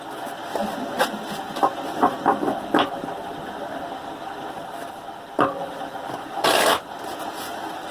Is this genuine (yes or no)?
yes